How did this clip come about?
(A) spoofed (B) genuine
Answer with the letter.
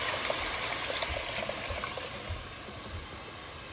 B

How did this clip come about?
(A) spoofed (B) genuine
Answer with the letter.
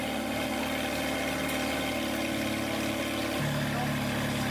B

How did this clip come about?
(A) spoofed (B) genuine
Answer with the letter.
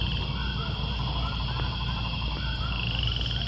B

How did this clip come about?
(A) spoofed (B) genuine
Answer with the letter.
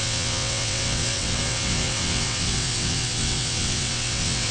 A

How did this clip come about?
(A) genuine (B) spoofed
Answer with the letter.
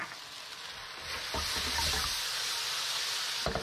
A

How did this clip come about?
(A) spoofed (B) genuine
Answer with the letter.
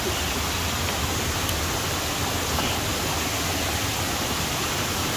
B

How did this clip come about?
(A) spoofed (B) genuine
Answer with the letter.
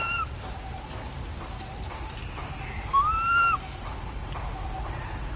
A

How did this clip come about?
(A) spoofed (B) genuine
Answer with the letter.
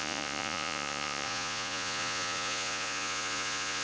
A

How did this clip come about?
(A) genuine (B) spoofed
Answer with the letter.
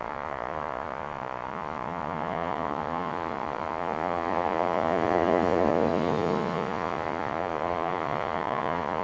B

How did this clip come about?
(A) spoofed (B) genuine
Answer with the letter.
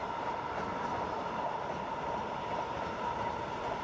B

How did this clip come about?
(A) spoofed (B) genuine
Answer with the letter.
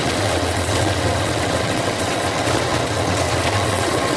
A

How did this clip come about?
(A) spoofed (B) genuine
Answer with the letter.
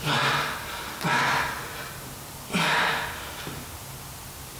B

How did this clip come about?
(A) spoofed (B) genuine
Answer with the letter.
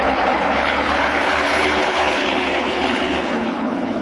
A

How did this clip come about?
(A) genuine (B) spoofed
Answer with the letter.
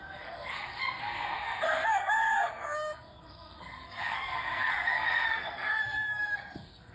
B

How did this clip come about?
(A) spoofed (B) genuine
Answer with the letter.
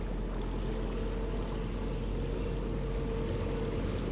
B